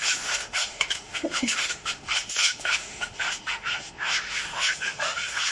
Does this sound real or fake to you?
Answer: fake